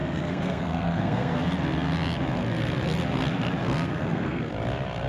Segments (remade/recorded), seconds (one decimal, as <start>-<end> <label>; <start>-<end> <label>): 0.0-1.4 remade; 1.4-3.6 recorded; 3.6-4.5 remade; 4.5-5.1 recorded